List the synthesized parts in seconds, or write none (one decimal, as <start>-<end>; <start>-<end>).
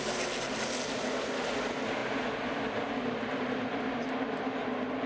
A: none